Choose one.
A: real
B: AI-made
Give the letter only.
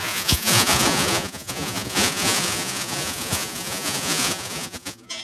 B